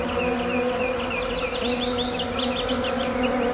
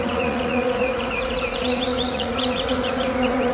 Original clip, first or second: first